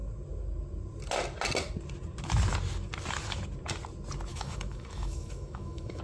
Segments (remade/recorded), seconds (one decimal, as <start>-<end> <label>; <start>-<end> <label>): 0.0-4.3 recorded; 4.3-6.0 remade